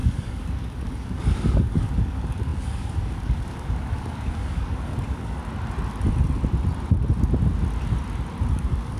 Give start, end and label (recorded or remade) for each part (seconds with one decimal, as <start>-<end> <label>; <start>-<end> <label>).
0.0-5.4 remade; 5.4-8.5 recorded; 8.5-9.0 remade